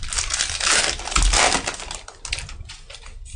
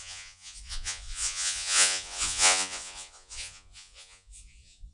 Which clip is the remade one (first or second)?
second